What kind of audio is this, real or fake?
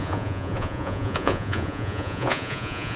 fake